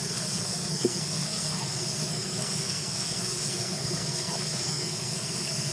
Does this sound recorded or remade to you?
remade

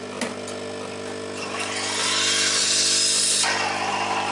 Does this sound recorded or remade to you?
recorded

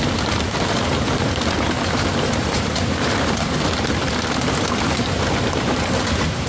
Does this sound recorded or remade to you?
recorded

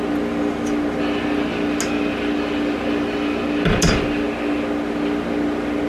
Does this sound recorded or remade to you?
recorded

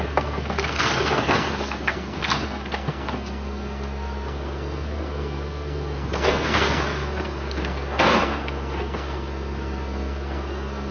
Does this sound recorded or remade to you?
remade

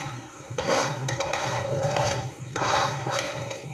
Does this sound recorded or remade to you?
remade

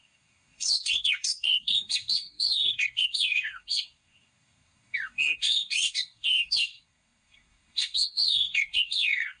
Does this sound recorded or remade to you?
remade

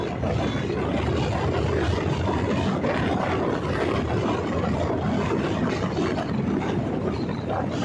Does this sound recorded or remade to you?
recorded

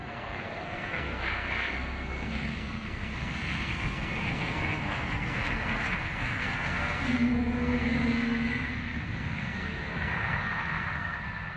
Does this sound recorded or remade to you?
remade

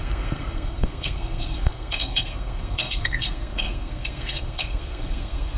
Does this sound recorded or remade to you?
remade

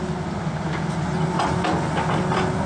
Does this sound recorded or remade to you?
recorded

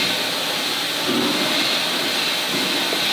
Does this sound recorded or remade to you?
recorded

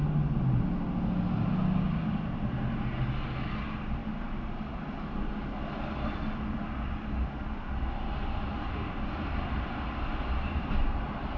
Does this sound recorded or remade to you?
recorded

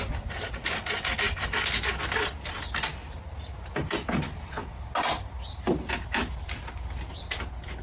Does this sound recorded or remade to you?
recorded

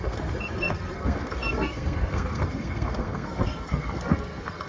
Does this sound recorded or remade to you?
remade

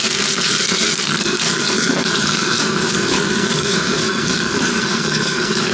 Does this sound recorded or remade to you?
remade